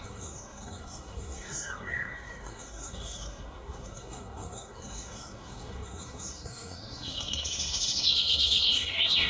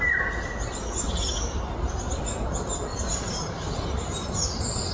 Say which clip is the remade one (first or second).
first